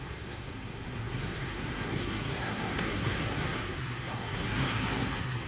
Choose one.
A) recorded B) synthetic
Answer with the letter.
B